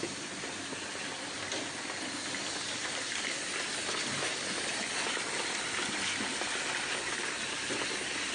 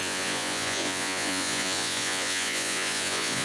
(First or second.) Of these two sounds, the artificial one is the second